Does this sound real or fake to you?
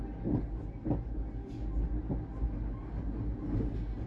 real